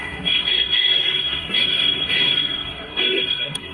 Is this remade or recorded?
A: remade